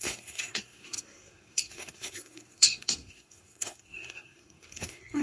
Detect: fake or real fake